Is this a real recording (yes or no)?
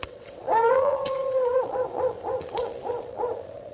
no